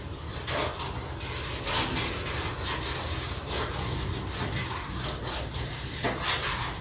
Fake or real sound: real